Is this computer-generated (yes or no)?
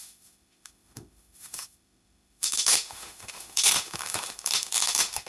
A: yes